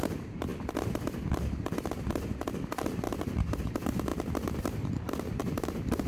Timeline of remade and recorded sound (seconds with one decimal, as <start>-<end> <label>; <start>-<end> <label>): 0.0-0.5 remade; 0.5-2.9 recorded; 2.9-4.1 remade; 4.1-4.6 recorded; 4.6-6.1 remade